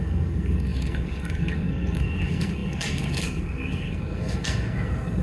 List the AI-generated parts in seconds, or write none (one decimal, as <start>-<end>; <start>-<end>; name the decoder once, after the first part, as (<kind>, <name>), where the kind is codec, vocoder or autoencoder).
0.0-5.2 (codec, SNAC)